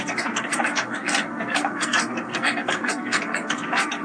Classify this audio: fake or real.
fake